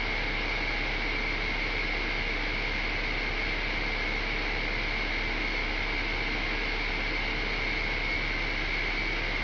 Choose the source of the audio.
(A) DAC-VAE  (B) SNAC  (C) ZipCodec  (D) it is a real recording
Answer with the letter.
D